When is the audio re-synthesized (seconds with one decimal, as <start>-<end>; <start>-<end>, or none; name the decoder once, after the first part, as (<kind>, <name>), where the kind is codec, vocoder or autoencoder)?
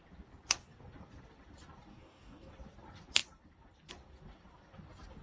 1.9-2.5 (codec, DAC)